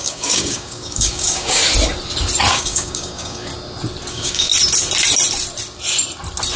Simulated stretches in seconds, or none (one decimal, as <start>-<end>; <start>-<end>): 0.0-1.6; 2.5-3.5; 4.1-4.5